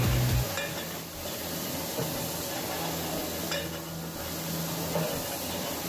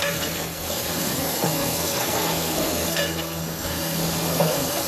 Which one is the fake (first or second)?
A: second